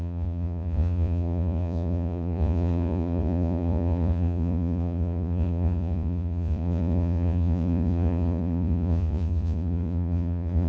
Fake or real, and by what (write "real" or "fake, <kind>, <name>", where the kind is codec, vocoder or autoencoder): fake, vocoder, Vocos